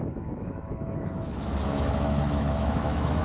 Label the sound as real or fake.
fake